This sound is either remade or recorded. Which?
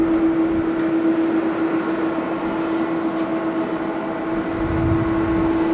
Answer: recorded